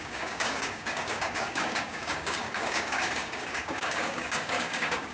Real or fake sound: fake